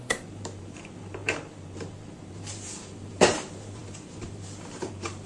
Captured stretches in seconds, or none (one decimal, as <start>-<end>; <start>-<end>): none